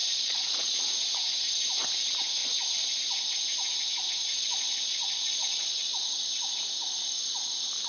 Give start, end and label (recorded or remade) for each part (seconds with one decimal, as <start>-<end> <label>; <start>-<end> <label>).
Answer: 0.0-0.8 remade; 0.8-4.2 recorded; 4.2-6.0 remade; 6.0-7.9 recorded